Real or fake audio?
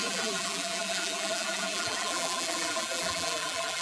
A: fake